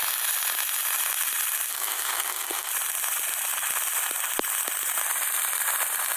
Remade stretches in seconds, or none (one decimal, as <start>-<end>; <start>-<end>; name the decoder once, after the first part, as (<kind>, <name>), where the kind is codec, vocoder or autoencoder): 1.7-2.7 (codec, SNAC)